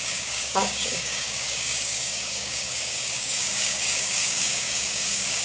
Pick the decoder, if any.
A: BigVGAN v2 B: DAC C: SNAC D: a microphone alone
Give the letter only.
B